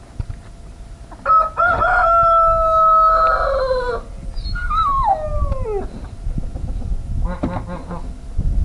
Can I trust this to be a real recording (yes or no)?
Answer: yes